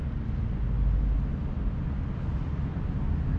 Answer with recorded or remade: recorded